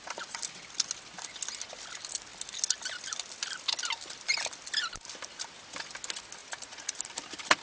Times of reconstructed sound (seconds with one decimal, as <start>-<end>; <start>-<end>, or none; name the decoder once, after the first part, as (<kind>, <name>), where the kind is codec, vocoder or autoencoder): 6.4-6.9 (vocoder, Vocos)

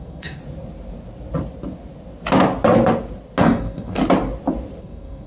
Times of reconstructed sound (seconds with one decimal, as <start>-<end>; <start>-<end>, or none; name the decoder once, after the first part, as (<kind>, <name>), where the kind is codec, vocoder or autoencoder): 0.0-0.4 (codec, SNAC); 3.4-4.0; 4.8-5.3

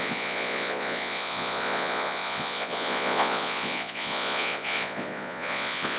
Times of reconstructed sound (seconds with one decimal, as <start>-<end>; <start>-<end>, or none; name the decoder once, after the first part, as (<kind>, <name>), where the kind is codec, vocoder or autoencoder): 0.0-6.0 (vocoder, Vocos)

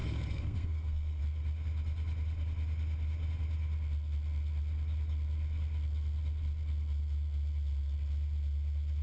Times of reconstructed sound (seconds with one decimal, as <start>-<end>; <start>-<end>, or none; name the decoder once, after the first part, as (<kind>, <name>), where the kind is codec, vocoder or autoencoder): 0.0-1.2 (codec, SNAC)